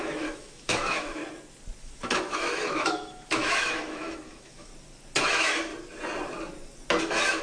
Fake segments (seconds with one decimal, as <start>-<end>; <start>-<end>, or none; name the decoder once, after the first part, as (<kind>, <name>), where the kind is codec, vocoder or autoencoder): 0.0-1.2 (autoencoder, DAC-VAE); 1.8-4.7; 5.2-5.7; 7.0-7.4